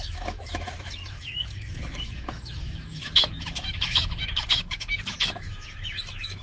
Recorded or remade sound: remade